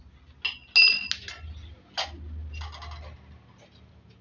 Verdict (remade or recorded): recorded